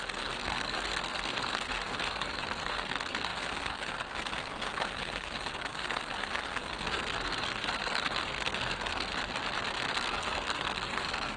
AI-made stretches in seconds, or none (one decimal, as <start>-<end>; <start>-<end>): 0.0-9.1; 9.9-11.4